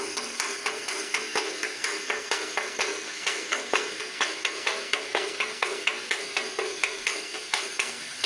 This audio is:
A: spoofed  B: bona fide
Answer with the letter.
A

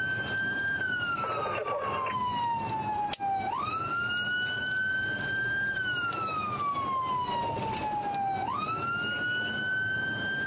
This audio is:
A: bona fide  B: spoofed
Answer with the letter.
A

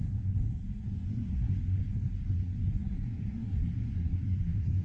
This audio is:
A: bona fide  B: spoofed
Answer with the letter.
B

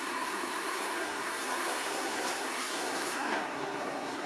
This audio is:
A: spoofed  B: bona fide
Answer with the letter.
A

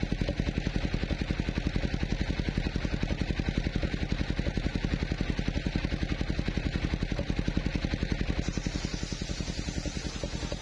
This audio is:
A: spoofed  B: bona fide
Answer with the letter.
B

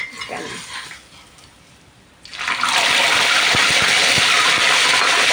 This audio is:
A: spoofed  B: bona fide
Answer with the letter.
B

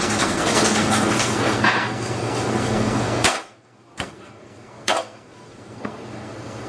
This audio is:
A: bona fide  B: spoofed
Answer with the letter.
B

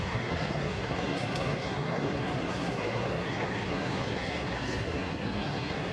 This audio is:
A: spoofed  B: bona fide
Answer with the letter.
A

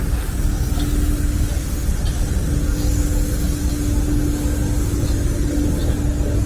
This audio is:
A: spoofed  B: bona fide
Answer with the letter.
B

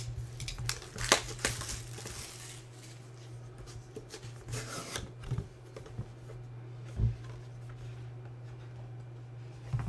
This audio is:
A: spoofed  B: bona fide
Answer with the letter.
B